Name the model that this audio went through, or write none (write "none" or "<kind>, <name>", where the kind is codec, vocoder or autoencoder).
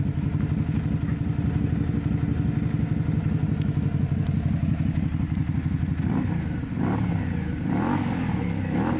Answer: none